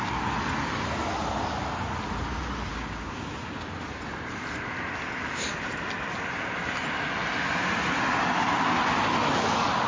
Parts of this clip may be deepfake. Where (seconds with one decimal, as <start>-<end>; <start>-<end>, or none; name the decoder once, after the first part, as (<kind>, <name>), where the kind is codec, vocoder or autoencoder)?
2.7-3.5 (codec, DAC)